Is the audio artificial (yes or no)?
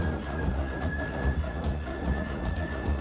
yes